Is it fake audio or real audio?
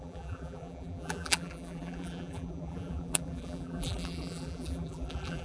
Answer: fake